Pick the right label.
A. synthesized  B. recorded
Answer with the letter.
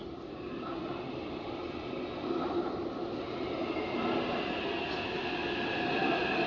B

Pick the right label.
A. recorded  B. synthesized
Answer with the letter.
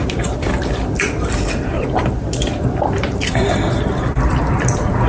B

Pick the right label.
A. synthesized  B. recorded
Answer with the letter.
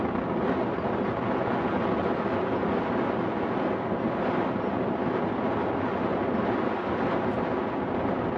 B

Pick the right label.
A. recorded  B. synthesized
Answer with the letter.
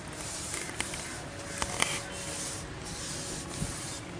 A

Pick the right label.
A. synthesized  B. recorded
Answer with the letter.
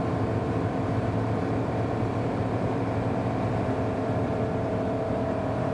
A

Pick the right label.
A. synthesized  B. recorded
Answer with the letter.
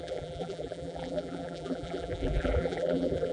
A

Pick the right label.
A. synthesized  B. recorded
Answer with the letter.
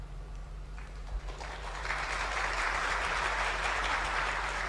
A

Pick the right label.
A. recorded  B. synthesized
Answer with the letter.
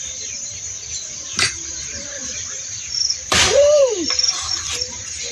B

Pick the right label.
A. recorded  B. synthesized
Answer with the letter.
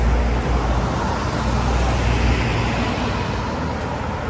A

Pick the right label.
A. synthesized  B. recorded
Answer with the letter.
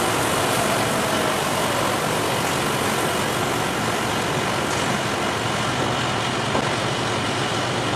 B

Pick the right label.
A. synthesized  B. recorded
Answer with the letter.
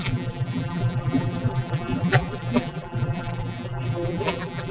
A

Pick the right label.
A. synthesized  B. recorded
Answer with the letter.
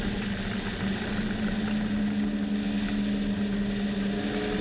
B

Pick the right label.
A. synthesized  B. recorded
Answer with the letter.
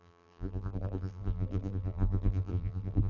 A